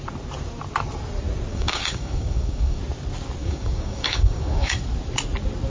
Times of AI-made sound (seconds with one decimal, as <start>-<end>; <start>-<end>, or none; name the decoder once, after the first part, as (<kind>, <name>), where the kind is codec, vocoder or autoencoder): 1.5-2.8 (codec, DAC); 3.4-4.8